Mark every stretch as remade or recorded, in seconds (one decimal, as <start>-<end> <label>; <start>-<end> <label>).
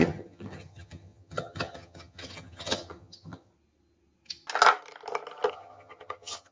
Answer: 0.0-3.5 remade; 3.5-5.5 recorded; 5.5-6.5 remade